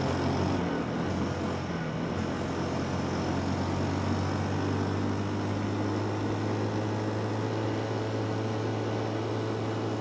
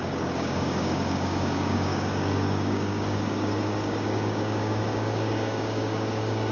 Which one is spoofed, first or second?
second